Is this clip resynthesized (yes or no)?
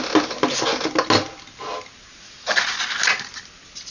no